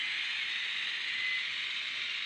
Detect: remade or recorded recorded